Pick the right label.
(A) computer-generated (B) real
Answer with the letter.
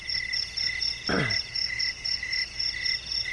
B